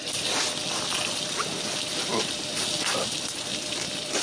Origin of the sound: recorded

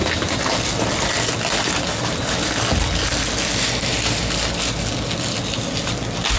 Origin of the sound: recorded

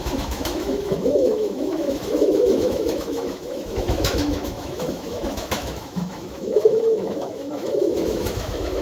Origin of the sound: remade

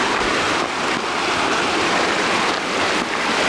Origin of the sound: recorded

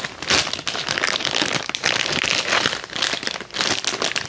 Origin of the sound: recorded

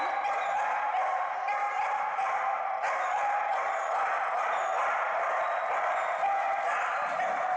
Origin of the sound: recorded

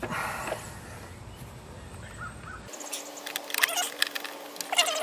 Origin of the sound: recorded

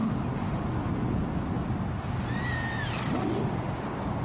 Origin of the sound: recorded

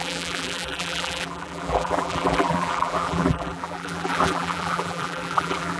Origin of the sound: remade